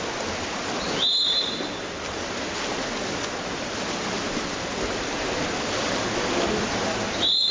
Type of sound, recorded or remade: recorded